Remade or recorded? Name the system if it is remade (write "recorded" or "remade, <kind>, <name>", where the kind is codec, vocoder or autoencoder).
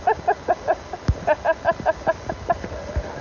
recorded